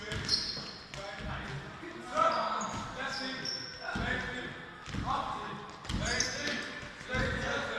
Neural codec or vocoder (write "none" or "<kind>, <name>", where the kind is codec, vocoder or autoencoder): none